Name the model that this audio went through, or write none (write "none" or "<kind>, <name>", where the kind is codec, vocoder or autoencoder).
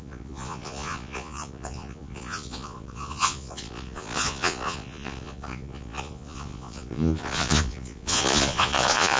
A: vocoder, Vocos